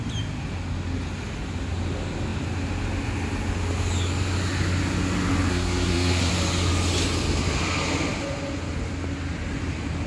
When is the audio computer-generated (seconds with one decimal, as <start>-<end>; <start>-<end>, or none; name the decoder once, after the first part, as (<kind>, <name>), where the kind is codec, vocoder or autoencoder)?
5.5-6.3 (codec, SNAC)